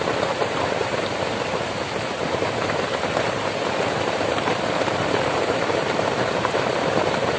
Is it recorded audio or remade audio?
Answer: remade